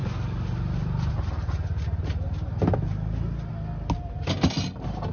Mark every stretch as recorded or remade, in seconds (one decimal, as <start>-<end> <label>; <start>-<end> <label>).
0.0-5.1 recorded